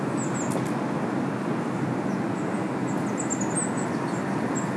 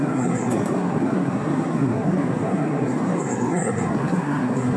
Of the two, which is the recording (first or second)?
first